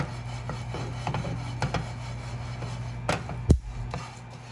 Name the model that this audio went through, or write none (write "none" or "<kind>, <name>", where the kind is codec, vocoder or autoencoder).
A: none